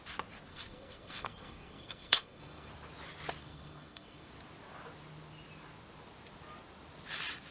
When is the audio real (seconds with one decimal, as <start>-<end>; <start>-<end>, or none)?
0.0-0.5; 2.7-3.4; 4.3-7.5